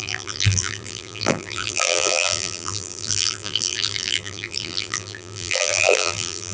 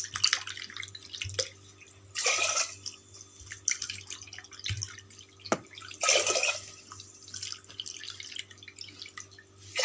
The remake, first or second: first